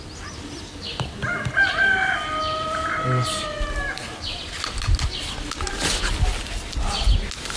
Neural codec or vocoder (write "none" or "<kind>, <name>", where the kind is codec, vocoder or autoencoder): none